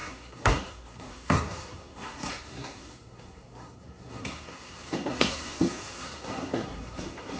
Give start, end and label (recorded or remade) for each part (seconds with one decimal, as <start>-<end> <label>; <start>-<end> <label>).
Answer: 0.0-7.4 remade